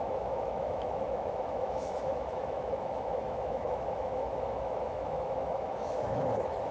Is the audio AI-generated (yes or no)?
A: yes